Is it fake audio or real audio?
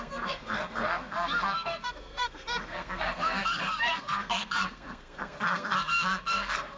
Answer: fake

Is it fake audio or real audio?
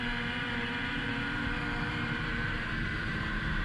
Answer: fake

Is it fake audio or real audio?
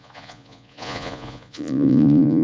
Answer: fake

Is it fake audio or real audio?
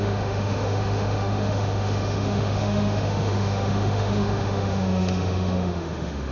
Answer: fake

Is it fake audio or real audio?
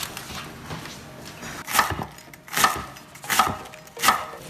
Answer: real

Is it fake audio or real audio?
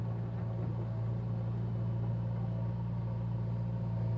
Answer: real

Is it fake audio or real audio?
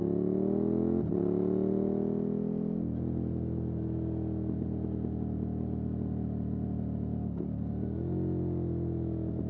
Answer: real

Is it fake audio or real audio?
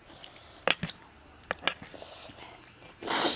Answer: real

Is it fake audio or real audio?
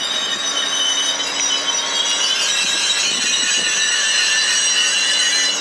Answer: real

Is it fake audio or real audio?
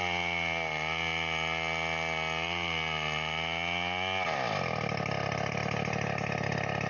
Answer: real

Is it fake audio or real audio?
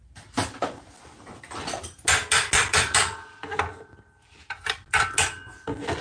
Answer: real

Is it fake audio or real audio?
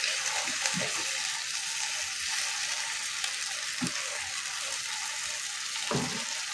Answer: real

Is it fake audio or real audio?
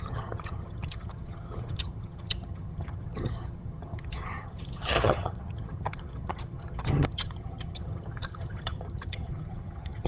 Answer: fake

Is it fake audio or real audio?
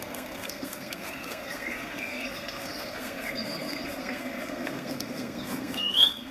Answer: fake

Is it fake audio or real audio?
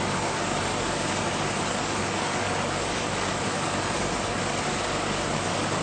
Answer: fake